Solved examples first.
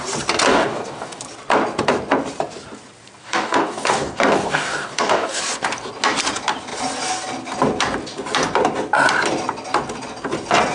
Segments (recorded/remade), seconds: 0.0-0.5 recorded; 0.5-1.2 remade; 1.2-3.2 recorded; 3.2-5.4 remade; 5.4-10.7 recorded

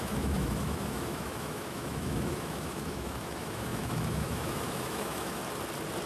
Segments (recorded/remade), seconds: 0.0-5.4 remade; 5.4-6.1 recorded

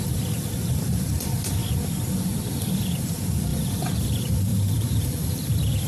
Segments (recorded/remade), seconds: 0.0-1.6 remade; 1.6-2.7 recorded; 2.7-5.9 remade

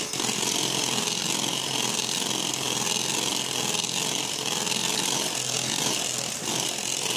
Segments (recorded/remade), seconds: 0.0-7.2 recorded